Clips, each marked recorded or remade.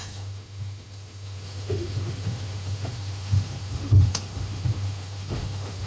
remade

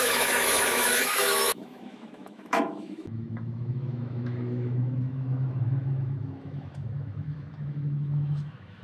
remade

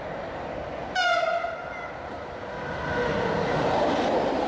recorded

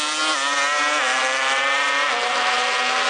recorded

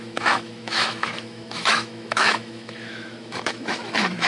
remade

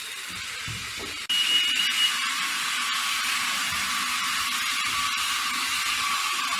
recorded